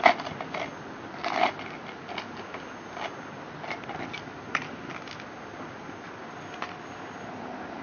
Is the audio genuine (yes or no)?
yes